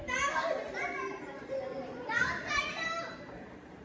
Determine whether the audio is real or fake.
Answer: fake